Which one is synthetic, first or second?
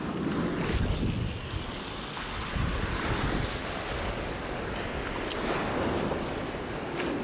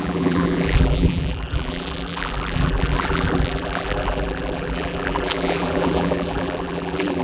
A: second